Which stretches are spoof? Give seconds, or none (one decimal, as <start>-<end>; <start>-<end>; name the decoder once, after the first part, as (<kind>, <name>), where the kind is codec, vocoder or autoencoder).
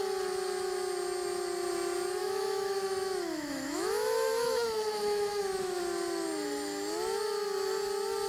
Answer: 2.2-5.8 (autoencoder, DAC-VAE)